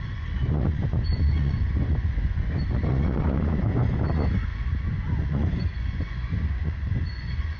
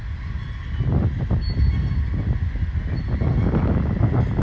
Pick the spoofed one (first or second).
first